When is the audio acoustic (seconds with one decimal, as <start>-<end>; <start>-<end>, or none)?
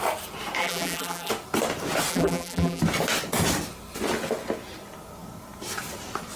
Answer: 0.0-0.6; 1.3-2.1; 2.8-6.4